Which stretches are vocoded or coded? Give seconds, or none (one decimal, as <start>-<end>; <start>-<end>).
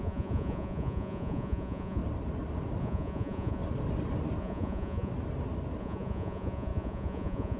0.0-2.0; 2.8-3.6; 4.4-5.1; 5.8-7.6